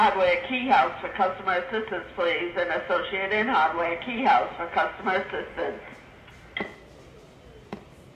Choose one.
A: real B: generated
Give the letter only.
A